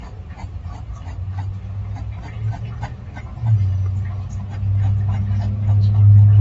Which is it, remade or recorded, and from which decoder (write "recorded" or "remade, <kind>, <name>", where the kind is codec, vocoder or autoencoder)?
recorded